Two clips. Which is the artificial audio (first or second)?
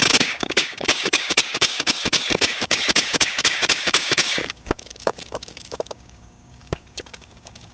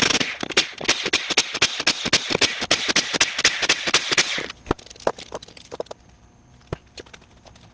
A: first